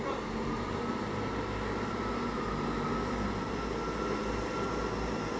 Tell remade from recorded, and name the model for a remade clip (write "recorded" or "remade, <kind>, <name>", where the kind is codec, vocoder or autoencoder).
recorded